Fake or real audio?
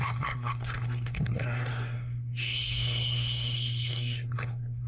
fake